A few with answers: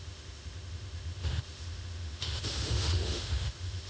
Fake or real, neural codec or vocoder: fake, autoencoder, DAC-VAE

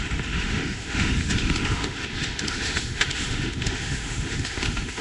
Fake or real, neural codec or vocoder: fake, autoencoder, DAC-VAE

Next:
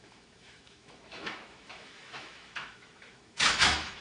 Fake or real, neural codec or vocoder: fake, autoencoder, DAC-VAE